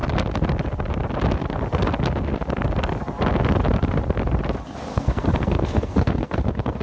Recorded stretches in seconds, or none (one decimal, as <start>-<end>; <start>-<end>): 0.0-4.9